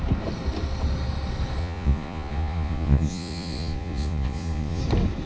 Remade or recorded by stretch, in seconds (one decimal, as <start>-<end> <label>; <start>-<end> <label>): 0.0-1.6 recorded; 1.6-4.8 remade; 4.8-5.3 recorded